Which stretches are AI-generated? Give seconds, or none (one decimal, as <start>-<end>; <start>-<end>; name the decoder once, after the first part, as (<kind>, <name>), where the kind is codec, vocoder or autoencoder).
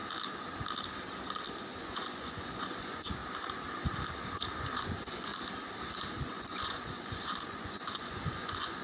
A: 1.8-3.2 (vocoder, Vocos); 4.6-5.3; 6.2-8.8